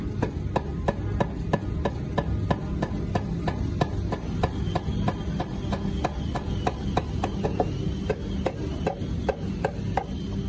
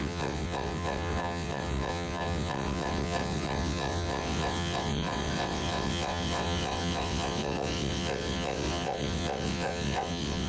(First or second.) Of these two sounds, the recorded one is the first